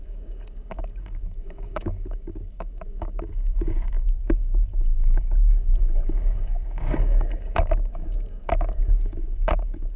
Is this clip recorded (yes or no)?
no